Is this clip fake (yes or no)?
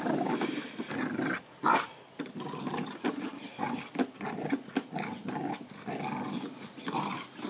no